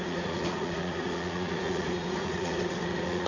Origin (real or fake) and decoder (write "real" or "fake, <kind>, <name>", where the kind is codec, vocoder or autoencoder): fake, vocoder, Vocos